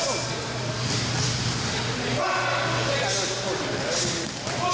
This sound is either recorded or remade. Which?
recorded